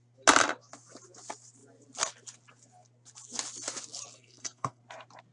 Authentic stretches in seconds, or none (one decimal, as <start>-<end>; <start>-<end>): 0.0-4.1; 4.8-5.3